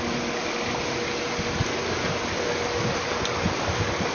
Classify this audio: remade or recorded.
recorded